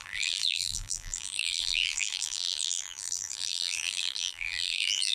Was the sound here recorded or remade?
remade